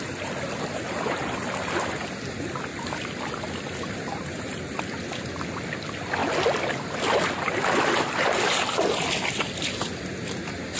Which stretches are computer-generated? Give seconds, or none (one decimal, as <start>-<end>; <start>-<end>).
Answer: none